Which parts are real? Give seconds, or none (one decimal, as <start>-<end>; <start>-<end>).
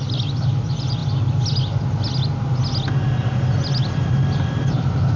0.0-5.2